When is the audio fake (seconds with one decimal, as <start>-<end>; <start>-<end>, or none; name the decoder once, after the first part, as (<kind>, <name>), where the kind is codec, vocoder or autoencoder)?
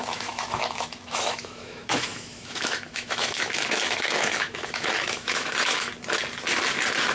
0.0-5.9 (autoencoder, DAC-VAE)